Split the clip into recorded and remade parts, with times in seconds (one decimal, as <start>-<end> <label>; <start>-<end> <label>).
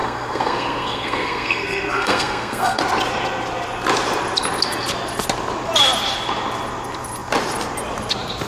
0.0-2.8 remade; 2.8-8.5 recorded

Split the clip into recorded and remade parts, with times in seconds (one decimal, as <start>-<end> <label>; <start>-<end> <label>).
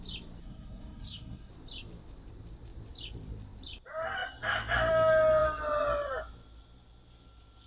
0.0-0.4 recorded; 0.4-1.5 remade; 1.5-7.7 recorded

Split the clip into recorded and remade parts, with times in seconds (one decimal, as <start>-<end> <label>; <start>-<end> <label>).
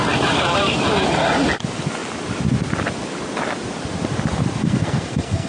0.0-4.6 recorded; 4.6-5.5 remade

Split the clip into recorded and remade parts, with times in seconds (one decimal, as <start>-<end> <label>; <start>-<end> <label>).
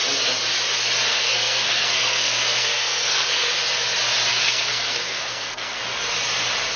0.0-1.1 recorded; 1.1-3.5 remade; 3.5-4.3 recorded; 4.3-5.8 remade; 5.8-6.8 recorded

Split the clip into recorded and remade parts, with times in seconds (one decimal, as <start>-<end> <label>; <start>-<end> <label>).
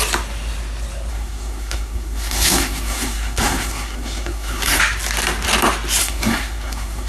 0.0-1.1 recorded; 1.1-4.8 remade; 4.8-6.0 recorded; 6.0-7.1 remade